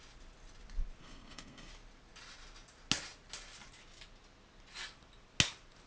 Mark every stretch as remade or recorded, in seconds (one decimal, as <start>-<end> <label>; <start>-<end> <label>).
0.0-1.0 recorded; 1.0-1.7 remade; 1.7-5.9 recorded